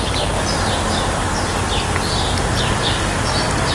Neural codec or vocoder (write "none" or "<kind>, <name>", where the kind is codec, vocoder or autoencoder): none